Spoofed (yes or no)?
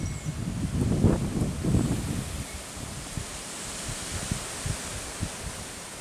no